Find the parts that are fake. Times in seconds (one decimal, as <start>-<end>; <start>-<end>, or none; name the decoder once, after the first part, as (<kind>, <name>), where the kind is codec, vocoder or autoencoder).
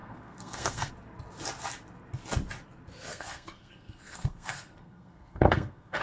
0.0-0.9 (codec, SNAC); 3.1-6.0